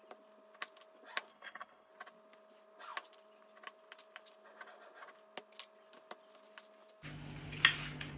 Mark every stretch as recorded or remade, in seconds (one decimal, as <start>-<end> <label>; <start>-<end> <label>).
0.0-1.3 recorded; 1.3-1.9 remade; 1.9-8.2 recorded